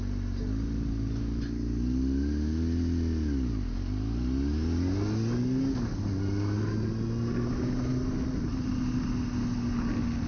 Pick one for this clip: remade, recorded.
recorded